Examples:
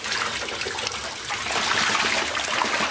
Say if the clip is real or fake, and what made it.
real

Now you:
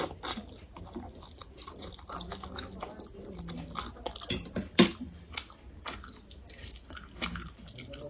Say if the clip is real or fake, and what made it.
real